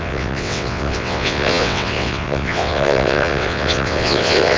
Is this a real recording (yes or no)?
no